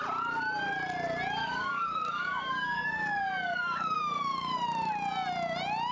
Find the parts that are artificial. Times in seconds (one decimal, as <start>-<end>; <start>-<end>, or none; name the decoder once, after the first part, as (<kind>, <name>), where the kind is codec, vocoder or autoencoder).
1.4-4.9 (codec, DAC)